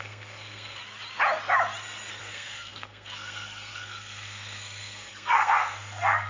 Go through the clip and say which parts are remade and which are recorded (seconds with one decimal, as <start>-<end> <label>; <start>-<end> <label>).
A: 0.0-0.8 remade; 0.8-2.2 recorded; 2.2-6.3 remade

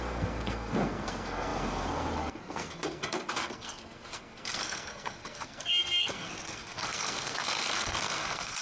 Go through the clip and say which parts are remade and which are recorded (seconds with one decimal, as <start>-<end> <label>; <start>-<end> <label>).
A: 0.0-8.6 remade

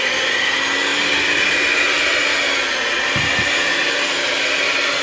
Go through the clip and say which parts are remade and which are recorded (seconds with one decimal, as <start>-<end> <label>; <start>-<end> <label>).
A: 0.0-5.0 recorded

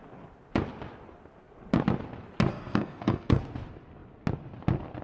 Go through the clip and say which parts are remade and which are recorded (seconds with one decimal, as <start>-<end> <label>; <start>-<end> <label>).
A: 0.0-2.5 recorded; 2.5-3.4 remade; 3.4-5.0 recorded

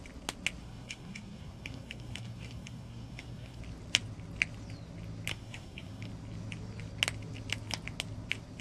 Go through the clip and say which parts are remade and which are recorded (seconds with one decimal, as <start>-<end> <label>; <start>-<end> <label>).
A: 0.0-0.6 recorded; 0.6-3.6 remade; 3.6-5.3 recorded; 5.3-6.1 remade; 6.1-8.6 recorded